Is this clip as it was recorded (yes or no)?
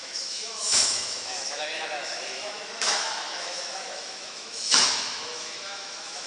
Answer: no